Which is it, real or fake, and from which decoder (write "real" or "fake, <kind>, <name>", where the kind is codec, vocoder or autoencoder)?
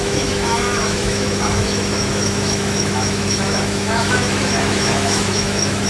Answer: fake, autoencoder, DAC-VAE